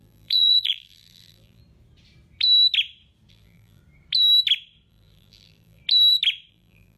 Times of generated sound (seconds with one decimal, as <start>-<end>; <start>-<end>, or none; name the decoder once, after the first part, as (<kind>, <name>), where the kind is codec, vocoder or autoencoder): 0.0-1.6 (vocoder, BigVGAN v2); 3.3-3.8; 4.9-5.8; 6.5-7.0